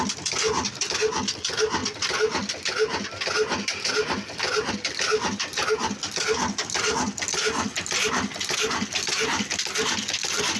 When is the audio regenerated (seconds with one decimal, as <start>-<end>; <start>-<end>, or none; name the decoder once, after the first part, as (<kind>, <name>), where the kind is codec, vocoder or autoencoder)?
none